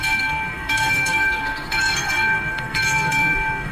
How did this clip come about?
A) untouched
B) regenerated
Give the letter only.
B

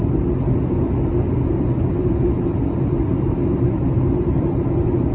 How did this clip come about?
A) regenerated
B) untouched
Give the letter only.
B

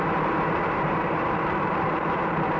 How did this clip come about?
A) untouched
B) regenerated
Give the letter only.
B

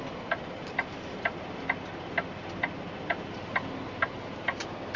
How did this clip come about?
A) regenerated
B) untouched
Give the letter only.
B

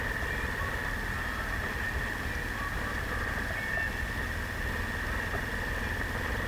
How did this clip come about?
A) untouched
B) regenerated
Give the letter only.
A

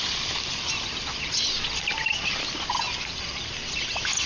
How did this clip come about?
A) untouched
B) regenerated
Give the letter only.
A